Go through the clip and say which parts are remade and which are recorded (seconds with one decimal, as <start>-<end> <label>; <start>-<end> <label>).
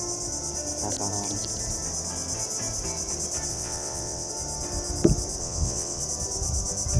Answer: 0.0-3.5 recorded; 3.5-4.3 remade; 4.3-5.4 recorded; 5.4-6.0 remade; 6.0-7.0 recorded